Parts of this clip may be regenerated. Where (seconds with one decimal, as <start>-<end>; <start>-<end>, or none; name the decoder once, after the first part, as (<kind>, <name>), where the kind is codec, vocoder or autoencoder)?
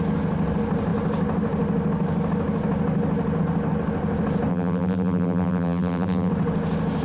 4.5-6.3 (vocoder, BigVGAN v2)